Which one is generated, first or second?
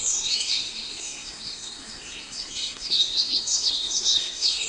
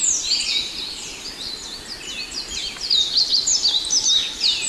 first